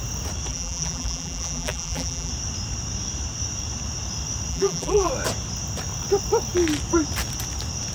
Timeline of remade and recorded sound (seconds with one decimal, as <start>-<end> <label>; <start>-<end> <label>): 0.0-0.5 recorded; 0.5-2.3 remade; 2.3-4.5 recorded; 4.5-5.1 remade; 5.1-7.9 recorded